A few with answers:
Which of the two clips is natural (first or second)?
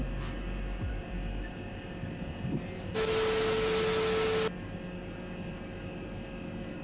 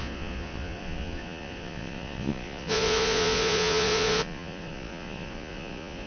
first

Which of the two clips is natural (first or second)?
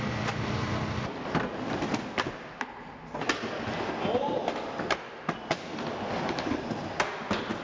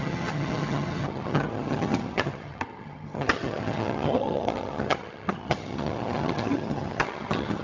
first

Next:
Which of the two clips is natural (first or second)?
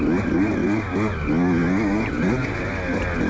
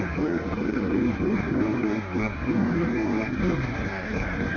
first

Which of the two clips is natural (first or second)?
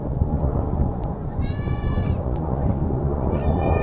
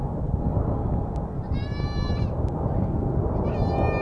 second